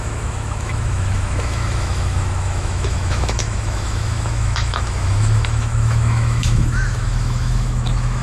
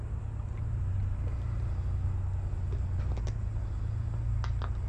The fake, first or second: first